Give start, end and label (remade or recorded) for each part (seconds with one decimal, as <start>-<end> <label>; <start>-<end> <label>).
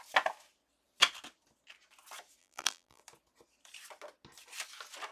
0.0-2.4 recorded; 2.4-3.0 remade; 3.0-5.1 recorded